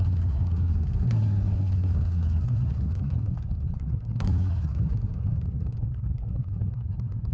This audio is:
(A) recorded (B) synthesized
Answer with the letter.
B